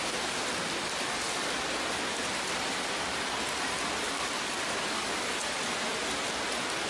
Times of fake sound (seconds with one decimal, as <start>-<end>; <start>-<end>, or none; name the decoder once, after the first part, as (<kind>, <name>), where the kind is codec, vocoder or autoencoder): none